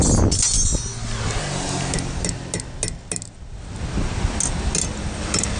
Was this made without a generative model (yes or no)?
yes